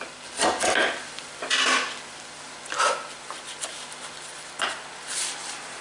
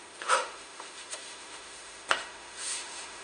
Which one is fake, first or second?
second